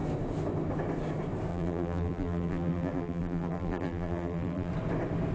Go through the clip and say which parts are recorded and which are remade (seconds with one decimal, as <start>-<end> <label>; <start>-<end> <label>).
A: 0.0-1.5 recorded; 1.5-4.7 remade; 4.7-5.3 recorded